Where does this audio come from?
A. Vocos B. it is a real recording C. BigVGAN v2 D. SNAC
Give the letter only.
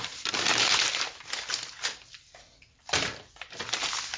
B